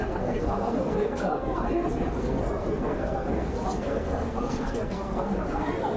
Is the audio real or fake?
fake